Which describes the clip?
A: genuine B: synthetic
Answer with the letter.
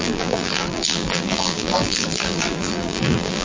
B